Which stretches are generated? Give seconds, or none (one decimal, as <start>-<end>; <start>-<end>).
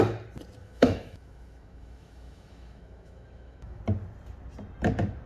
0.6-3.8